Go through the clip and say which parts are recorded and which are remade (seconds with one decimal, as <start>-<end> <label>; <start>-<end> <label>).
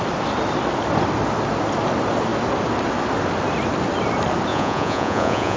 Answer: 0.0-4.5 recorded; 4.5-5.6 remade